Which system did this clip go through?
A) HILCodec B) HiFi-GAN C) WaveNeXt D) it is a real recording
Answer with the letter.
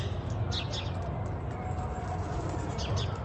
D